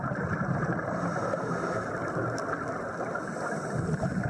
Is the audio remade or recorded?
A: recorded